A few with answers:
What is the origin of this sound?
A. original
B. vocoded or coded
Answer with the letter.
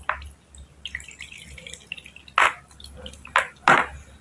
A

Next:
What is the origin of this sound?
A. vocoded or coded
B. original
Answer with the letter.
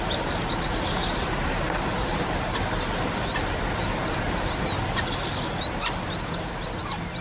B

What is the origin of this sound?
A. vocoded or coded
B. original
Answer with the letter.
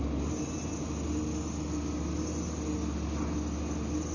B